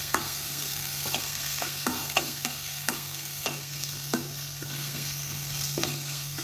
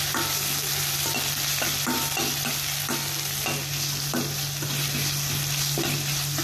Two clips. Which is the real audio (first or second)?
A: second